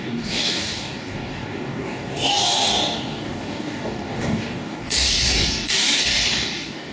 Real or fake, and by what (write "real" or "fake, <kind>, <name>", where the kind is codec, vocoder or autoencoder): fake, codec, DAC